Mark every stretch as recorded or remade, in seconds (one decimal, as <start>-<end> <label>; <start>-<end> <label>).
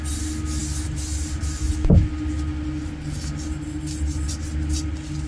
0.0-5.3 recorded